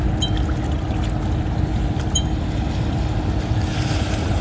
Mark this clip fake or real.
real